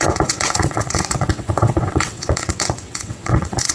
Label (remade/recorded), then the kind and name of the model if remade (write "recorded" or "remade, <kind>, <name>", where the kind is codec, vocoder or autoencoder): remade, vocoder, WaveNeXt